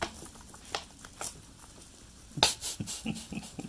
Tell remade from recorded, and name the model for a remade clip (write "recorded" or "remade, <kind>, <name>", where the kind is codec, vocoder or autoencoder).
recorded